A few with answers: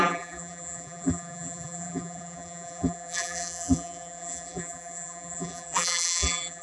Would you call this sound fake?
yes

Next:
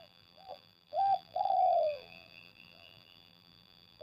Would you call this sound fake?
yes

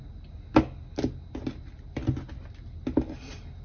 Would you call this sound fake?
no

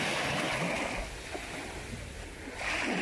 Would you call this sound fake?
no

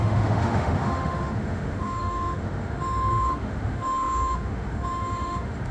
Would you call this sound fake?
yes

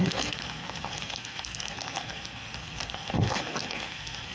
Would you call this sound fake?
yes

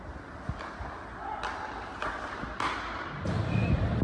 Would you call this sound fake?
no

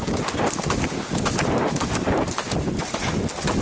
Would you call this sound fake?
no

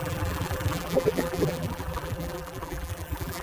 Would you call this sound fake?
yes